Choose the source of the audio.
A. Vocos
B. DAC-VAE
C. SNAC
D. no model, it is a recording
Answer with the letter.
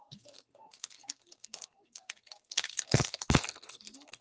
C